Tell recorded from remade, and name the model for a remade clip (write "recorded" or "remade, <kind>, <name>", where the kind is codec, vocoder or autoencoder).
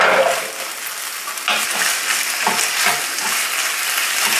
recorded